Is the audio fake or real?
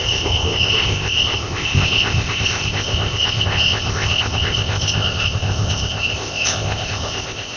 fake